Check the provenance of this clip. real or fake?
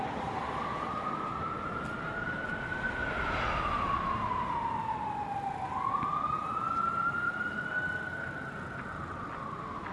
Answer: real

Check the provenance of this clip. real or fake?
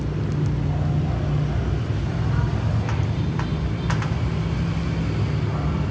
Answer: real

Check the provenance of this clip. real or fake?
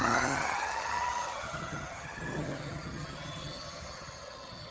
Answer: fake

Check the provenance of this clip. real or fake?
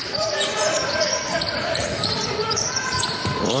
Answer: fake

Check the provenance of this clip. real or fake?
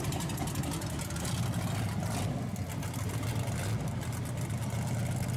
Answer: real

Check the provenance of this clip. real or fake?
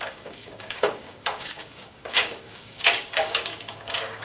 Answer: fake